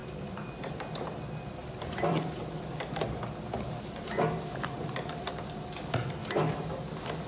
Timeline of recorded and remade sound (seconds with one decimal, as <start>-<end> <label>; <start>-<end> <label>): 0.0-1.6 recorded; 1.6-2.8 remade; 2.8-6.2 recorded; 6.2-6.8 remade; 6.8-7.3 recorded

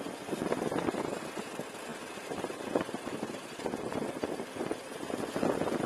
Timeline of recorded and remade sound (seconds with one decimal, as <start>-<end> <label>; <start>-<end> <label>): 0.0-5.9 recorded